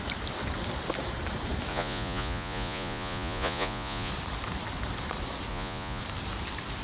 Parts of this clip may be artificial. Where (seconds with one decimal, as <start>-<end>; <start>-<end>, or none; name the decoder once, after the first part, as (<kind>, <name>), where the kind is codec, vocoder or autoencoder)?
1.7-4.1 (vocoder, Vocos); 5.5-6.0